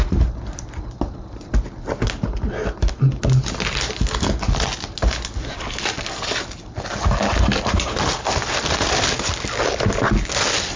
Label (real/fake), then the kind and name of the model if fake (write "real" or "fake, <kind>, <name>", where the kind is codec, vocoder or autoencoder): real